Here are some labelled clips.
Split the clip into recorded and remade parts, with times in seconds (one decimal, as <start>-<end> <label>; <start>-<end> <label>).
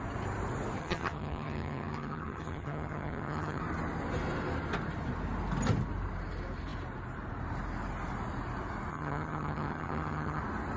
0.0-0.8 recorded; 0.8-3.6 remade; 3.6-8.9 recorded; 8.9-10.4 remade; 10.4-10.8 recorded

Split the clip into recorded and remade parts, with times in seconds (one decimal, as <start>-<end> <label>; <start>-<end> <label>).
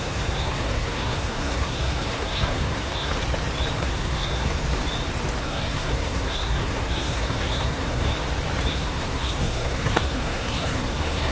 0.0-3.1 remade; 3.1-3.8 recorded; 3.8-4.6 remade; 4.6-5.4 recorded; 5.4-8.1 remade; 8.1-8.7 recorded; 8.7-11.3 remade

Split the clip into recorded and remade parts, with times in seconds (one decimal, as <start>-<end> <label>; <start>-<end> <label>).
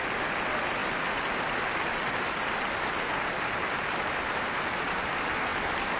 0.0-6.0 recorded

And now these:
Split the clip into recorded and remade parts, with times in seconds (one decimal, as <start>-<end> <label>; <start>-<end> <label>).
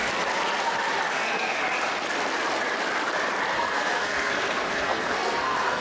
0.0-1.1 recorded; 1.1-1.6 remade; 1.6-3.6 recorded; 3.6-5.8 remade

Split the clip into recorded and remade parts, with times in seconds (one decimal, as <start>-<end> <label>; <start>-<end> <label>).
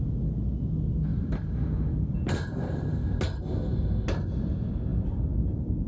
0.0-1.1 recorded; 1.1-3.0 remade; 3.0-5.9 recorded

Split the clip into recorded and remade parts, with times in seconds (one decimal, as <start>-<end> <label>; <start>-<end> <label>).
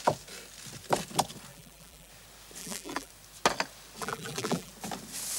0.0-1.5 recorded; 1.5-2.1 remade; 2.1-2.6 recorded; 2.6-3.1 remade; 3.1-4.0 recorded; 4.0-4.7 remade; 4.7-5.4 recorded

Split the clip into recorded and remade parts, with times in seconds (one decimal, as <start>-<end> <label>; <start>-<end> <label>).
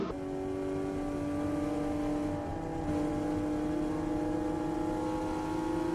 0.0-5.9 recorded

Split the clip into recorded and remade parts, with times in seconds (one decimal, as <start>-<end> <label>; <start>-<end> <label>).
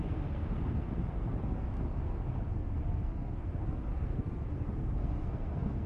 0.0-5.9 remade